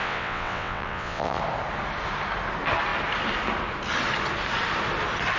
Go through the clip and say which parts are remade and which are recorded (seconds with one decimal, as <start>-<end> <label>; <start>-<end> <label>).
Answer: 0.0-1.4 remade; 1.4-5.4 recorded